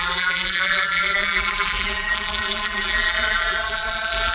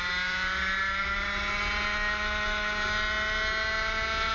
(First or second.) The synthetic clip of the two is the first